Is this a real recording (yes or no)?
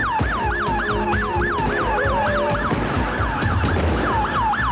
yes